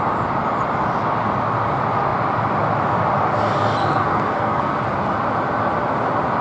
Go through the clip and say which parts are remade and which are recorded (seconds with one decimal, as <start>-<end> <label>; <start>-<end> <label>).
0.0-3.8 recorded; 3.8-4.8 remade; 4.8-6.4 recorded